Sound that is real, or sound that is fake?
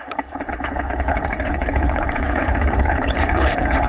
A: fake